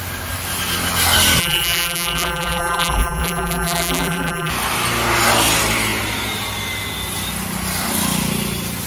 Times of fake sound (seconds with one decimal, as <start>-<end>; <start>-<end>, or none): 1.4-4.5